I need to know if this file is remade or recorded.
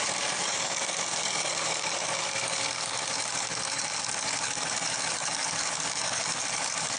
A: remade